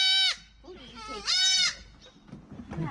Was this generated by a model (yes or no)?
no